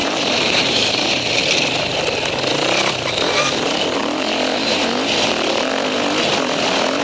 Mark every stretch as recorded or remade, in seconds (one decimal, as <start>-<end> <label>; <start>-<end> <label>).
0.0-1.3 remade; 1.3-4.0 recorded; 4.0-5.7 remade; 5.7-7.0 recorded